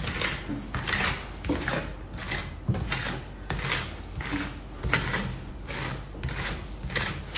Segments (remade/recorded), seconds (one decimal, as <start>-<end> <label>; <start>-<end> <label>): 0.0-7.4 recorded